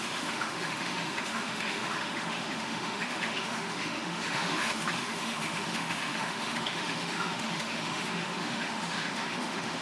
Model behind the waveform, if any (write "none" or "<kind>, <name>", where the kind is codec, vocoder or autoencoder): autoencoder, DAC-VAE